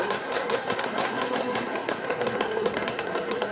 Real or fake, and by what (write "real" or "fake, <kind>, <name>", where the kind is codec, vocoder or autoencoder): fake, codec, SNAC